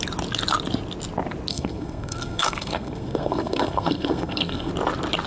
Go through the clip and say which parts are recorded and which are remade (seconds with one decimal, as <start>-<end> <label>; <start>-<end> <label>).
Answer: 0.0-1.5 recorded; 1.5-4.7 remade; 4.7-5.3 recorded